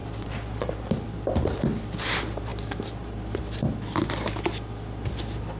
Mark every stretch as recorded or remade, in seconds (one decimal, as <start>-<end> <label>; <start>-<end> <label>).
0.0-2.1 remade; 2.1-2.5 recorded; 2.5-4.1 remade; 4.1-5.6 recorded